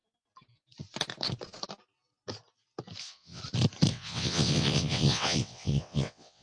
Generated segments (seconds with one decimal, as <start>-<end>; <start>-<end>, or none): 3.0-3.4; 3.9-6.4

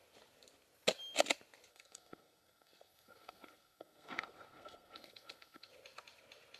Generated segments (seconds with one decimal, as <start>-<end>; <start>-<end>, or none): 1.7-5.7

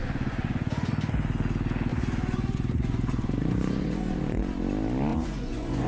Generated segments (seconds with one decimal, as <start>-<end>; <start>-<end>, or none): 0.0-0.9; 1.9-4.6; 5.1-5.9

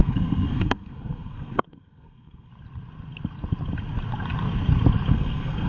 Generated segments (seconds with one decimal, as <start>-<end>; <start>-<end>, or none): 0.0-2.5; 5.1-5.7

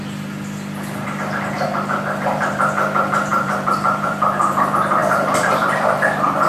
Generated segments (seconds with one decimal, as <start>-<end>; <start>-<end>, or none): 3.3-4.5; 5.0-6.5

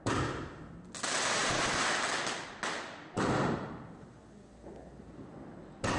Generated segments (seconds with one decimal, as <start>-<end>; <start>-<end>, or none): none

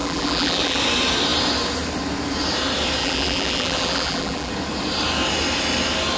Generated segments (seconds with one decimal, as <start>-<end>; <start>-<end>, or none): 0.0-0.8; 3.0-4.5